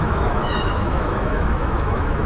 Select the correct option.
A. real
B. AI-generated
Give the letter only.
B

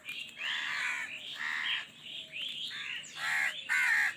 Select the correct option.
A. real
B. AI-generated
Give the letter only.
A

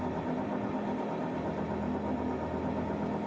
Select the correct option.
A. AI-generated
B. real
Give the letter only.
B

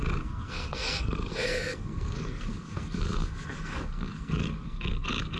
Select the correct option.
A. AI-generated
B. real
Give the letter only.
A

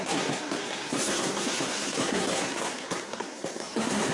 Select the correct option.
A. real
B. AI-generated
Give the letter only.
B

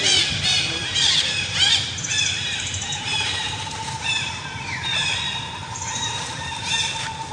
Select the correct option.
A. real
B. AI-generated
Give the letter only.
B